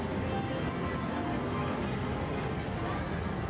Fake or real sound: real